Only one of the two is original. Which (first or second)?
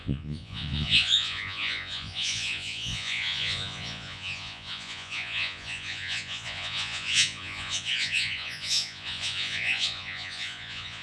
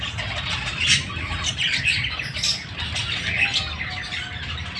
second